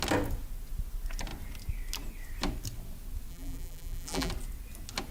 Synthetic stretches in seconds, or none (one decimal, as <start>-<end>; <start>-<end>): 3.3-4.3